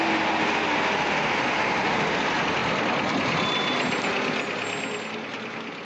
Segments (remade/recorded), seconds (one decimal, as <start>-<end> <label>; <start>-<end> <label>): 0.0-5.8 recorded